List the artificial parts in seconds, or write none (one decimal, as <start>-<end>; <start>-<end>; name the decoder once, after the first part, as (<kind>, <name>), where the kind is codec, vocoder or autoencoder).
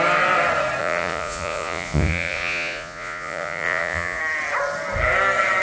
0.8-4.2 (vocoder, Vocos)